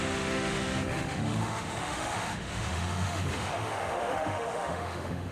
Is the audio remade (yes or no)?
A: yes